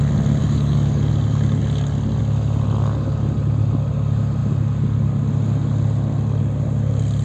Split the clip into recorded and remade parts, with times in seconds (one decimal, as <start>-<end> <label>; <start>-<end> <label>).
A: 0.0-0.4 recorded; 0.4-1.1 remade; 1.1-7.2 recorded